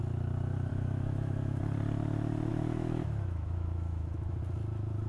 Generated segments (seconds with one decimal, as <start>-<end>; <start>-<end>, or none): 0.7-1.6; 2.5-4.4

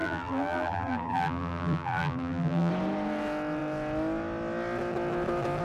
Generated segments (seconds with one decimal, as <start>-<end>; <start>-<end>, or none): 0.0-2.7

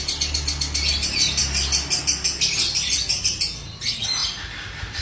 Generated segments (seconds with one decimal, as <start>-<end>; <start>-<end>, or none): none

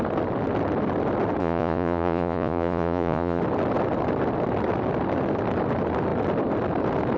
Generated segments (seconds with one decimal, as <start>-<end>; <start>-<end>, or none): 1.4-3.4